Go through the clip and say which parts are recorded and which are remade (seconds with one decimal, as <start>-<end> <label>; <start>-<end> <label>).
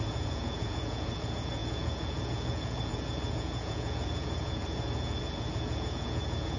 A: 0.0-6.6 remade